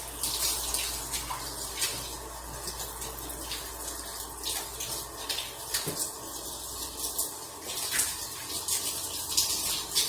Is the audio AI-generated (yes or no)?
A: no